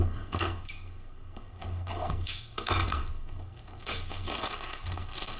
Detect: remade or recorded remade